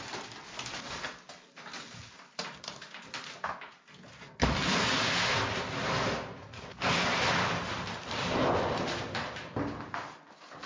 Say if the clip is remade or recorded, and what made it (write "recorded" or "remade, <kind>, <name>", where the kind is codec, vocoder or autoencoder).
recorded